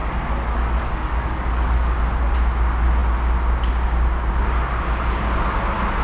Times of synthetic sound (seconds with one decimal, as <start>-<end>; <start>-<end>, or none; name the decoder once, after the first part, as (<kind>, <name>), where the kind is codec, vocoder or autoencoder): 0.0-2.0 (codec, DAC)